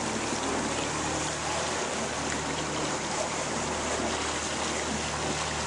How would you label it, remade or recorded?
recorded